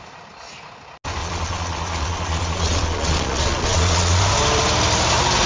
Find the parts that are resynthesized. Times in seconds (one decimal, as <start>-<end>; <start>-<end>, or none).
1.2-4.2